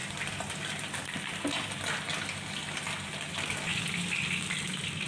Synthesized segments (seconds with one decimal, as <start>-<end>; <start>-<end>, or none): none